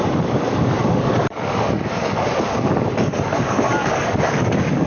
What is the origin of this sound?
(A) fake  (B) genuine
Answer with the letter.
A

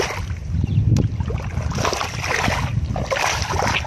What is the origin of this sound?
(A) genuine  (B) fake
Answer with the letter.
A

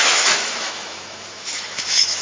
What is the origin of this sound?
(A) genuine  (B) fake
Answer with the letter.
B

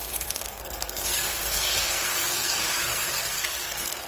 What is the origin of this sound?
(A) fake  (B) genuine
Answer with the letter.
A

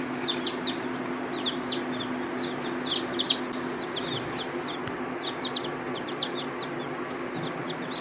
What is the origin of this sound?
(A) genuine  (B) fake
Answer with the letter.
A